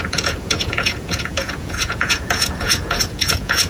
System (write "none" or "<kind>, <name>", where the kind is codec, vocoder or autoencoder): vocoder, Vocos